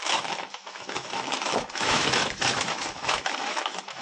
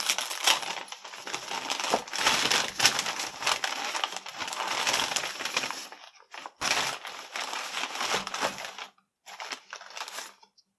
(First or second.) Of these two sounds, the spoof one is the first